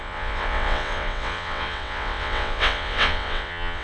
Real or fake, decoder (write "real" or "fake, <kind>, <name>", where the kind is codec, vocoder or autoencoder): fake, vocoder, WaveNeXt